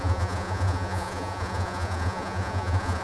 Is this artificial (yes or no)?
yes